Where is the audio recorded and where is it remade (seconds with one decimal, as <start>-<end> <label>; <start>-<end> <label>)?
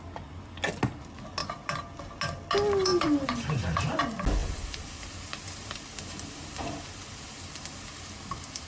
0.0-2.9 recorded; 2.9-4.0 remade; 4.0-4.4 recorded; 4.4-8.7 remade